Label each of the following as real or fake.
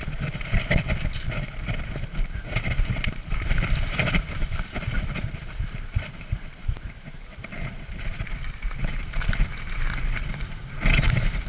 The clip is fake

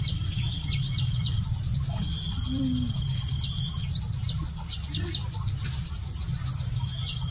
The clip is real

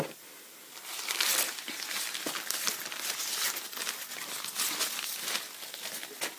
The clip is real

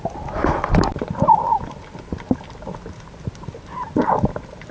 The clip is real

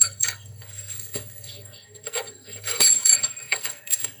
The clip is fake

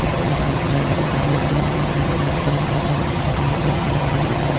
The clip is fake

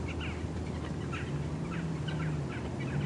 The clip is real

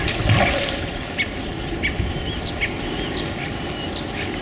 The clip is real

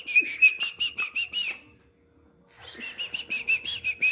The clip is real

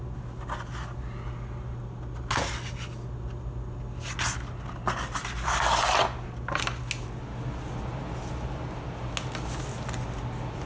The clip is real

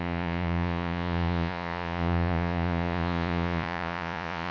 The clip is fake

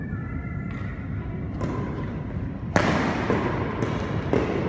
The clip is real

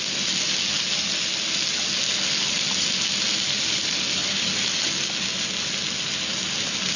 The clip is real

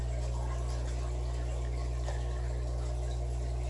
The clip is real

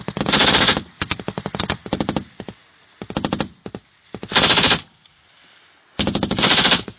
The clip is real